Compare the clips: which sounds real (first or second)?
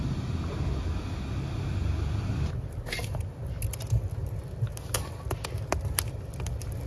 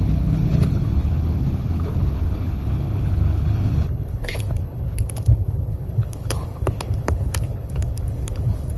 first